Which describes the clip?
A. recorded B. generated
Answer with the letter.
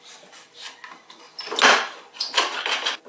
A